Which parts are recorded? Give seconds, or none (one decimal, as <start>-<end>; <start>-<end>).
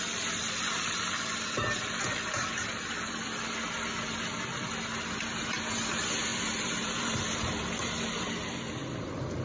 0.0-6.3; 8.0-9.4